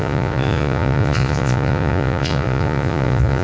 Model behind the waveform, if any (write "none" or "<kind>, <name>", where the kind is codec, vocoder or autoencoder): vocoder, Vocos